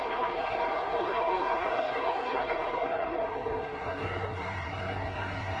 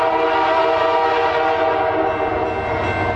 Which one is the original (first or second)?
second